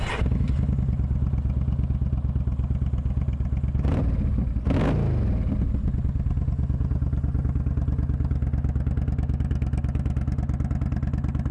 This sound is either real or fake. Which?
real